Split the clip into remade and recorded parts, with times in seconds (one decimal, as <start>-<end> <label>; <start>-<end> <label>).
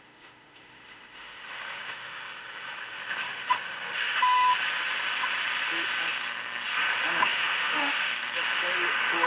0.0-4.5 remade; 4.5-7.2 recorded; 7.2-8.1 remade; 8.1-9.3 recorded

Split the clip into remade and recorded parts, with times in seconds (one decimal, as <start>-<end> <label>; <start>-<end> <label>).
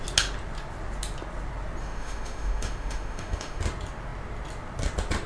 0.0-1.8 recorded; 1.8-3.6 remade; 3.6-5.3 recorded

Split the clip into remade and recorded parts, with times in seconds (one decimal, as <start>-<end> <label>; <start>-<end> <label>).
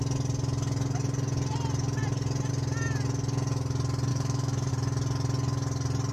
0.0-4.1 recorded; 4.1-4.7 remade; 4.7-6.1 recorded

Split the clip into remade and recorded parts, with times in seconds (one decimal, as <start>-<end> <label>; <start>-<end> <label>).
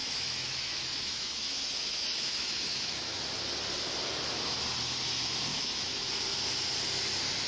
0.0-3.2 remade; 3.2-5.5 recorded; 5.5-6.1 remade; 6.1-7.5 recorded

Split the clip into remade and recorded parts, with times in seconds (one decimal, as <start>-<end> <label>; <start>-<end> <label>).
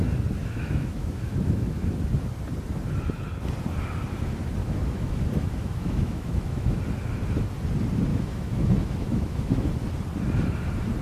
0.0-0.4 recorded; 0.4-1.9 remade; 1.9-4.6 recorded; 4.6-6.8 remade; 6.8-8.1 recorded; 8.1-9.7 remade; 9.7-11.0 recorded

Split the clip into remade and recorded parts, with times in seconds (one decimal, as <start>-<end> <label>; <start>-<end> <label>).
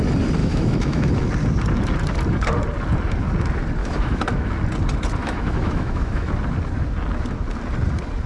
0.0-0.4 recorded; 0.4-1.1 remade; 1.1-3.8 recorded; 3.8-4.5 remade; 4.5-5.2 recorded; 5.2-6.3 remade; 6.3-8.3 recorded